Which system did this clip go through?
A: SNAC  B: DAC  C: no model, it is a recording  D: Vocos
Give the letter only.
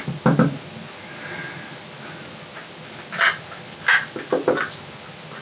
C